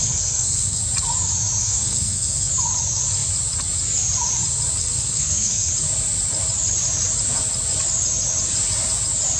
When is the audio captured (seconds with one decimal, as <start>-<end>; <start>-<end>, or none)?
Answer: 0.8-1.6; 2.5-4.8; 5.7-9.4